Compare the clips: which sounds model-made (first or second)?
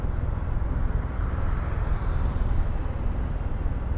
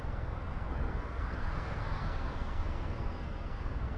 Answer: second